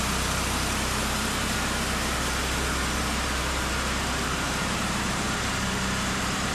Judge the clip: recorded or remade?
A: remade